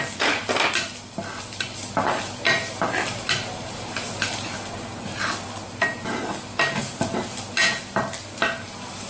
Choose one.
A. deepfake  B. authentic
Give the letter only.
B